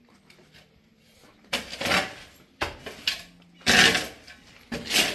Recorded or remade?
recorded